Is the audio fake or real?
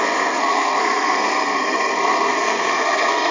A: fake